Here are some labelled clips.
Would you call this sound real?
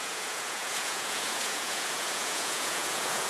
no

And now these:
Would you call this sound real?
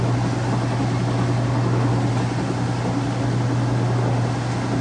yes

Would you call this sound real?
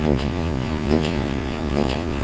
no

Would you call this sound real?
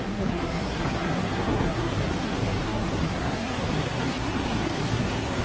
no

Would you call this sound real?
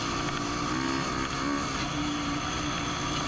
yes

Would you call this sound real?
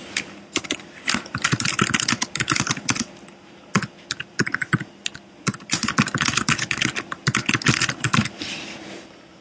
yes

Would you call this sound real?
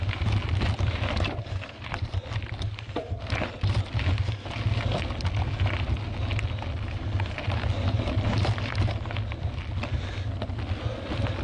yes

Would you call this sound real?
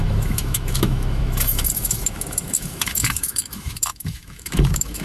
no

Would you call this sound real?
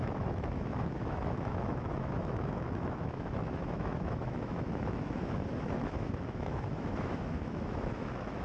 no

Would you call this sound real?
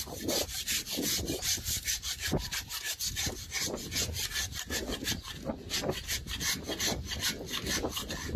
yes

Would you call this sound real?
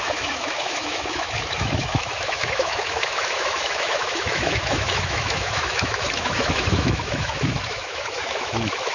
no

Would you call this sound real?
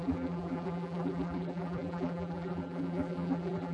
no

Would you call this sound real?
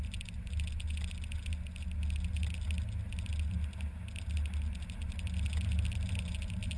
yes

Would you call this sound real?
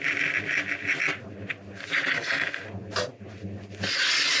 yes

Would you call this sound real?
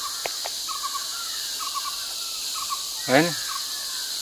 yes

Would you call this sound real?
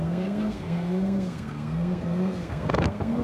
no